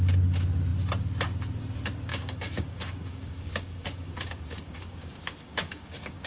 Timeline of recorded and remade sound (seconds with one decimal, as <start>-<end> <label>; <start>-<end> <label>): 0.0-2.1 recorded; 2.1-6.3 remade